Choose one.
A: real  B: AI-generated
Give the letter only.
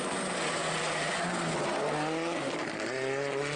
A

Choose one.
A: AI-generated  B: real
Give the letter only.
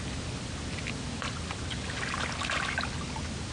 B